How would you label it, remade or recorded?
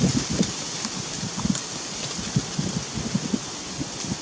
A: recorded